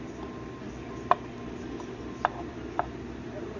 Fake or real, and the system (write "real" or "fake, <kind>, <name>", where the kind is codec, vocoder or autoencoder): real